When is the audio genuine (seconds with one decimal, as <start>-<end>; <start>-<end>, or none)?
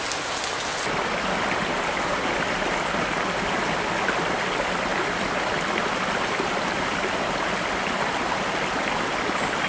0.0-9.7